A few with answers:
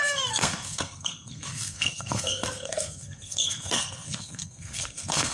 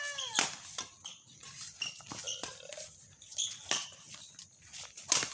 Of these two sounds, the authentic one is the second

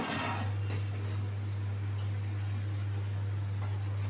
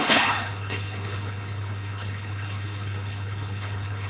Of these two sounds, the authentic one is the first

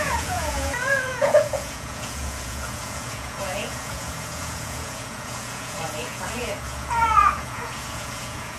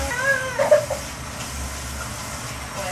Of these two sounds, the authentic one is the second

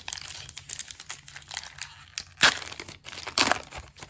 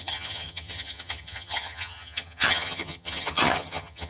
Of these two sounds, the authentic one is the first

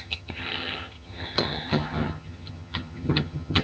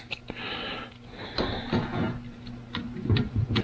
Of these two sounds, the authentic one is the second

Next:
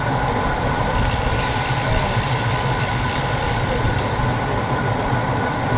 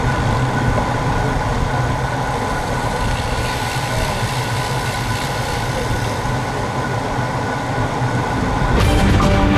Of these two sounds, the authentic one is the second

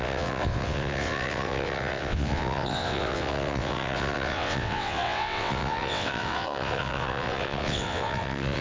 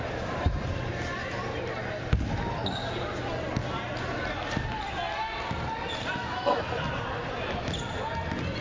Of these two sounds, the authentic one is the second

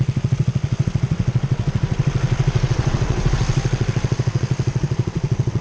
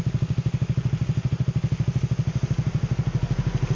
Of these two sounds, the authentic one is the second